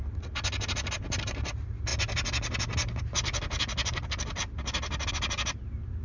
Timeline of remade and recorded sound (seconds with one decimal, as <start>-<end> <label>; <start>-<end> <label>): 0.0-6.0 recorded